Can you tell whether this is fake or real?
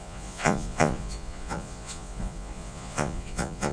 fake